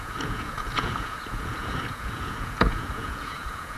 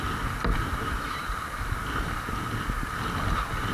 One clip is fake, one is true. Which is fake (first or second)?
first